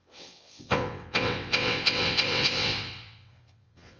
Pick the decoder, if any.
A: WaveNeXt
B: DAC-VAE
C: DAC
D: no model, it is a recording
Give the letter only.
A